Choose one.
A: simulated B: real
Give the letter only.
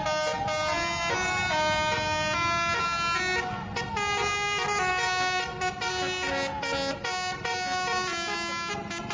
B